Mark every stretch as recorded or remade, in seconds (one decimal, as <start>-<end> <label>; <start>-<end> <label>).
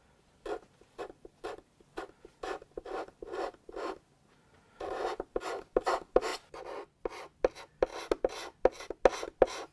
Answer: 0.0-9.7 recorded